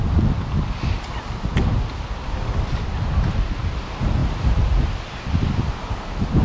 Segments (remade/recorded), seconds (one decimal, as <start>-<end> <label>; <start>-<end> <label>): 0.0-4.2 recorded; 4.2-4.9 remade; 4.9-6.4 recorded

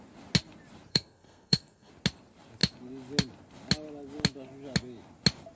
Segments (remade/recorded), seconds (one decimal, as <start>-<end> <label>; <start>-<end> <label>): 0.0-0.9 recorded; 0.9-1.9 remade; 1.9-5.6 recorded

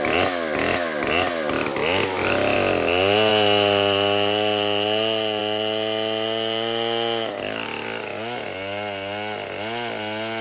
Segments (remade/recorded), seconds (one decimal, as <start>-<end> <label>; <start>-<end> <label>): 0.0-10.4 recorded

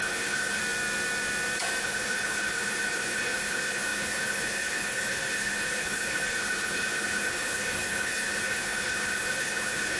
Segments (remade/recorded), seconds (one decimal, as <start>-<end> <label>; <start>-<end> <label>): 0.0-0.6 remade; 0.6-1.8 recorded; 1.8-10.0 remade